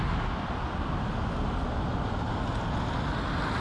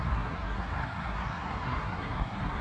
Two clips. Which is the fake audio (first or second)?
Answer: second